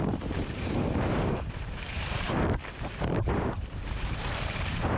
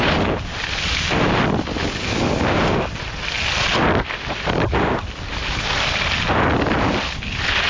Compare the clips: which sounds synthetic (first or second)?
first